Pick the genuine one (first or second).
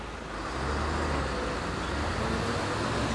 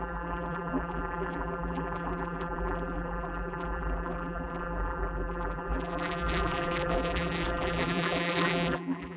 first